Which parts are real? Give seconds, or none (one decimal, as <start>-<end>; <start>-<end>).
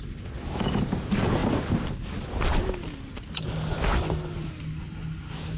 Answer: 0.0-5.6